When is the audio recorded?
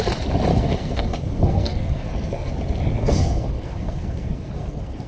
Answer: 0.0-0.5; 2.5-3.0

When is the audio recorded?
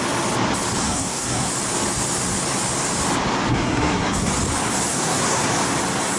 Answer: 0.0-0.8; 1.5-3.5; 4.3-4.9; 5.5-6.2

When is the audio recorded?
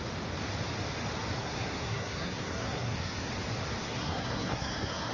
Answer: 0.0-1.4; 3.3-3.8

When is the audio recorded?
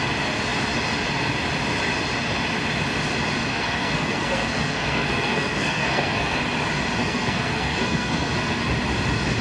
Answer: 0.0-3.5; 6.4-7.0; 8.6-9.4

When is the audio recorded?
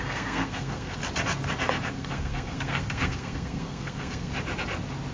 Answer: 1.0-1.9; 4.3-5.1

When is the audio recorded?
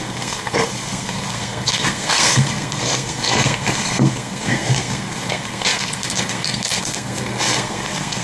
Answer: none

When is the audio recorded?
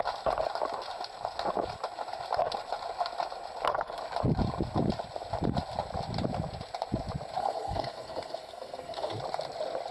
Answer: 0.0-7.4; 9.1-9.9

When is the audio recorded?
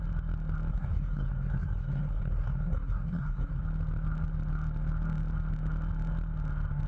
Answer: 0.0-0.7; 3.6-6.9